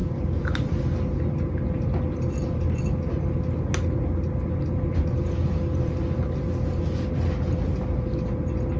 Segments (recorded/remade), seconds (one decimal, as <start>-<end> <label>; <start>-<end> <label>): 0.0-8.8 recorded